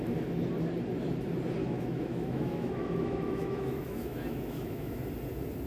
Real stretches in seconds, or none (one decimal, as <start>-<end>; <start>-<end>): 0.0-1.6; 5.0-5.7